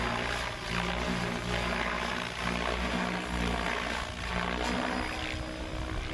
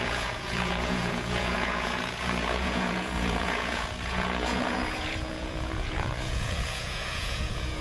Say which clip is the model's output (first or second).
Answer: second